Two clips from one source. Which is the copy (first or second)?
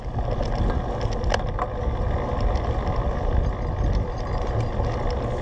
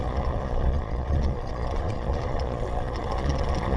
second